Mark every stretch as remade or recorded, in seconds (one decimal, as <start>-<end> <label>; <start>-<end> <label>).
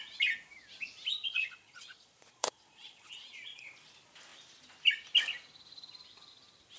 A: 0.0-1.1 recorded; 1.1-3.7 remade; 3.7-6.8 recorded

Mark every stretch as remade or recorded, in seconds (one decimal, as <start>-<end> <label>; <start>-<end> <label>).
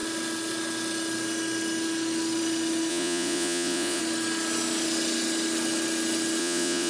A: 0.0-2.9 recorded; 2.9-4.0 remade; 4.0-6.4 recorded; 6.4-6.9 remade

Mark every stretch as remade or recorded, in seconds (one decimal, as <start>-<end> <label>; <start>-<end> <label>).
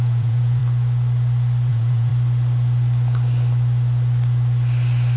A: 0.0-0.6 remade; 0.6-1.7 recorded; 1.7-2.1 remade; 2.1-5.2 recorded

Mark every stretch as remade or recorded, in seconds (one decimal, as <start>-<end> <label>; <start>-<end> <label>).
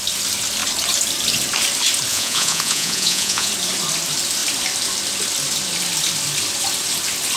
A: 0.0-2.1 recorded; 2.1-3.5 remade; 3.5-7.4 recorded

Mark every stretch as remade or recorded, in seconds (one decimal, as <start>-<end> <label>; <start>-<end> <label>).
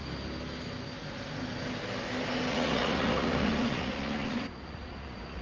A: 0.0-2.5 recorded; 2.5-5.4 remade